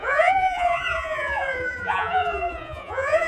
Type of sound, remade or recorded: remade